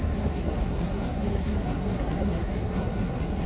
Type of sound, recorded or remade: remade